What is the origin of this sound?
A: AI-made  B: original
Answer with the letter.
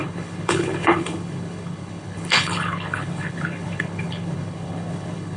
A